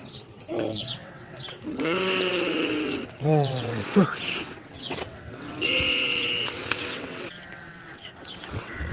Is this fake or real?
fake